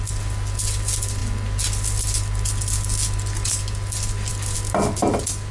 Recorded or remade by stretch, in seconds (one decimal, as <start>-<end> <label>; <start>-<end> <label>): 0.0-5.5 recorded